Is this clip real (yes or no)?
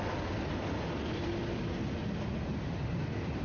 yes